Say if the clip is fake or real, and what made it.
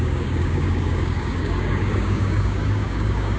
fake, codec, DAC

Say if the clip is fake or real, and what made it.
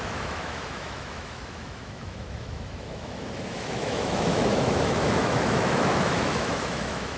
fake, autoencoder, DAC-VAE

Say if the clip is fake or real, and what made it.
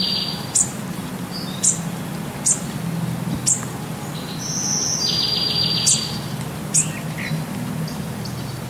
real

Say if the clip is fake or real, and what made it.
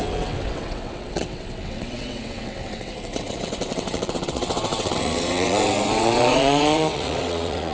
fake, vocoder, WaveNeXt